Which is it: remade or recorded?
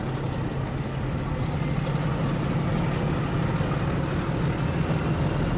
recorded